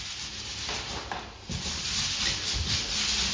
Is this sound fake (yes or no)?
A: no